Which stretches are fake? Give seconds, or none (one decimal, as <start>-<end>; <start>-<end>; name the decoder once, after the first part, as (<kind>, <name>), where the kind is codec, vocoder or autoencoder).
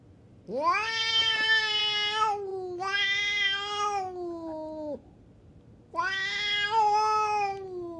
1.2-1.8 (vocoder, BigVGAN v2)